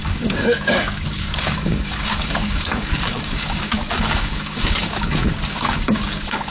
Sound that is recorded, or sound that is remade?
remade